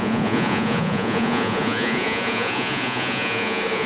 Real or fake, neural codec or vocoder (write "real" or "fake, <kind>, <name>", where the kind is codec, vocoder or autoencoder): fake, vocoder, Vocos